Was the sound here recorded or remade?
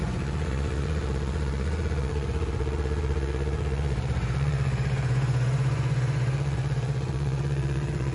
remade